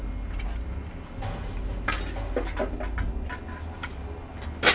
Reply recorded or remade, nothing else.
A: recorded